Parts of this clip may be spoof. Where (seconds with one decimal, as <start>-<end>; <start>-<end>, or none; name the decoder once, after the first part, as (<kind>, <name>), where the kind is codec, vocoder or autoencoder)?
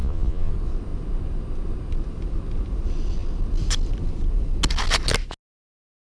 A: 0.0-0.5 (vocoder, Vocos)